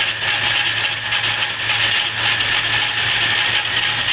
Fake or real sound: real